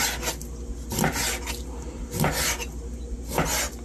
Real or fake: real